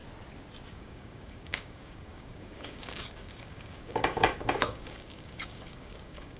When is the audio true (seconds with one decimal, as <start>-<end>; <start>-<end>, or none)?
0.0-0.7